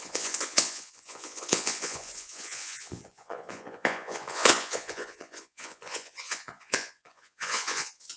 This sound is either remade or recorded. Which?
remade